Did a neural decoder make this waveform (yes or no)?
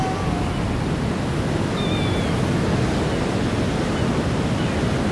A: no